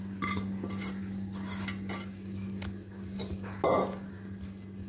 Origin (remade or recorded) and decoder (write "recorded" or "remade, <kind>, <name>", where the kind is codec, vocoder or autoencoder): recorded